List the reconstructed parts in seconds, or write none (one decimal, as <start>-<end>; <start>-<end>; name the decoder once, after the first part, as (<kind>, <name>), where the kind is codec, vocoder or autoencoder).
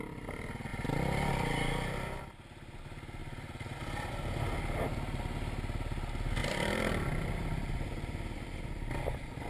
0.7-1.3 (vocoder, BigVGAN v2); 3.2-4.1; 6.4-8.9